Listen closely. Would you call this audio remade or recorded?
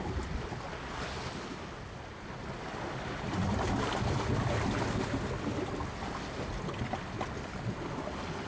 recorded